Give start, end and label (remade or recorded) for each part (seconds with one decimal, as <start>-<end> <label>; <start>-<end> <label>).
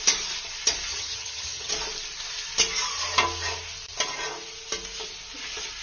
0.0-0.9 recorded; 0.9-1.7 remade; 1.7-5.8 recorded